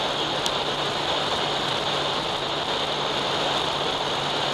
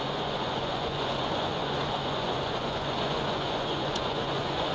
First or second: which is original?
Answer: first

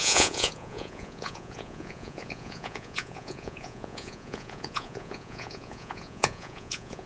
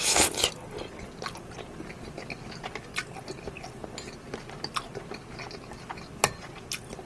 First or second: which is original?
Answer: second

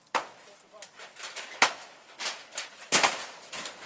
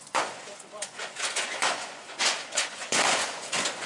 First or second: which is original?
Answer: first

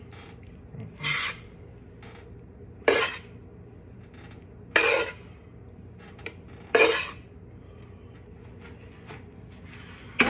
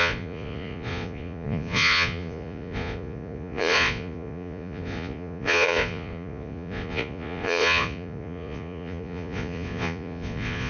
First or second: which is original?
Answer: first